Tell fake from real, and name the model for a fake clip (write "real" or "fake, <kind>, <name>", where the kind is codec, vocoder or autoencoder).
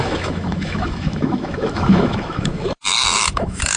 fake, autoencoder, DAC-VAE